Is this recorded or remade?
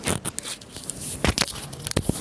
recorded